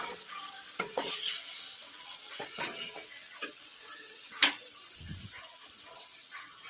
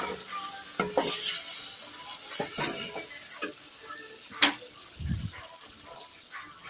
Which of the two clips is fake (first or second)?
first